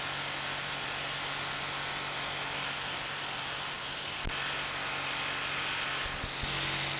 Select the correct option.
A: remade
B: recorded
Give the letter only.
B